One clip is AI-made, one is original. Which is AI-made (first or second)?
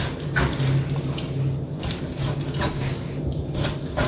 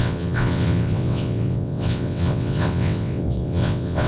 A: second